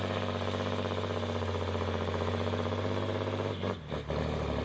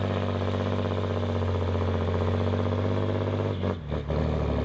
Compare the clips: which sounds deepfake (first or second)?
first